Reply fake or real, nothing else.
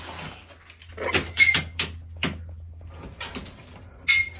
real